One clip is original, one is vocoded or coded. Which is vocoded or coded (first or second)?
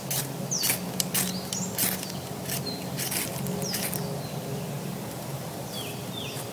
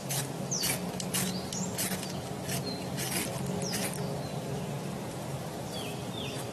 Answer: first